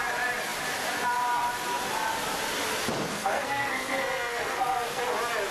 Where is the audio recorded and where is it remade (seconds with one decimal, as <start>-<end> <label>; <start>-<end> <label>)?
0.0-3.1 recorded; 3.1-5.0 remade; 5.0-5.5 recorded